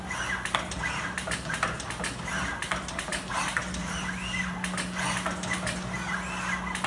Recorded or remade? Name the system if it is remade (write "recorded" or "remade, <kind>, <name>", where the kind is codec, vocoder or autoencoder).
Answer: recorded